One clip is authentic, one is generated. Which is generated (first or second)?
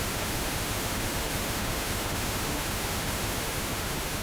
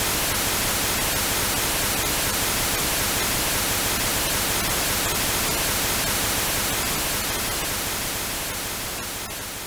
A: first